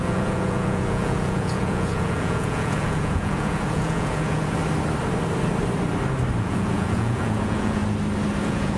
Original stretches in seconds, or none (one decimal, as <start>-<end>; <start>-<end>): 4.6-6.4; 7.8-8.4